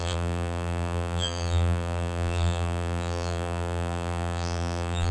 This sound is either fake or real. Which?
fake